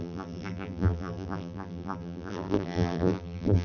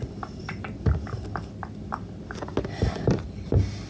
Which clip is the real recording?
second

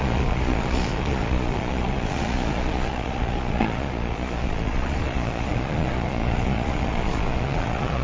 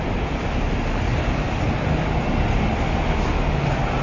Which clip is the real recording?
second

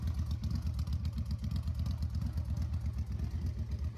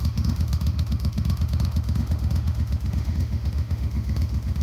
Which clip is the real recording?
first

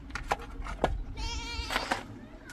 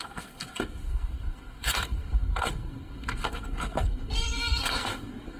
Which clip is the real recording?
first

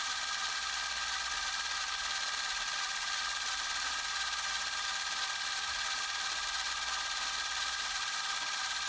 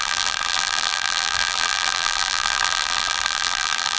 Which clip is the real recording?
first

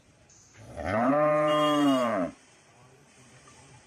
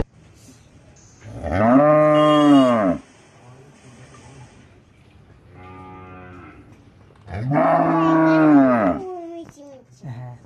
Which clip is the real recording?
second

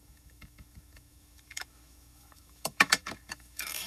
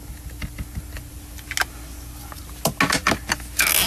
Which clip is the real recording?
second